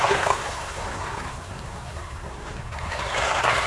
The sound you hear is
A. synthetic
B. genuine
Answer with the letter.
A